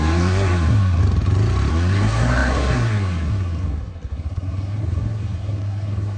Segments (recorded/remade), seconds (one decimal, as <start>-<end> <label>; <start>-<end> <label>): 0.0-1.0 remade; 1.0-1.7 recorded; 1.7-6.2 remade